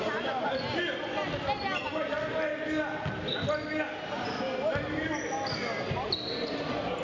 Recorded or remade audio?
recorded